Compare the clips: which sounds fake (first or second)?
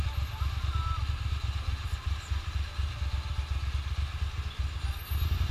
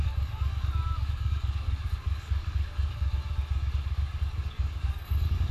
second